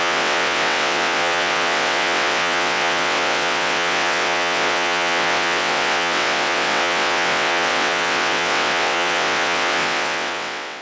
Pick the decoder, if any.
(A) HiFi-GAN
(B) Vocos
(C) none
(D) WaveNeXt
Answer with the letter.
D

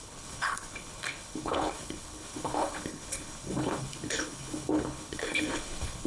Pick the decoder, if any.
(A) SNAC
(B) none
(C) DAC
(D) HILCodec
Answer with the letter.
D